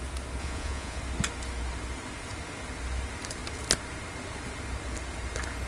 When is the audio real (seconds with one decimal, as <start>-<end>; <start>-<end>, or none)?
0.0-0.4; 1.0-5.7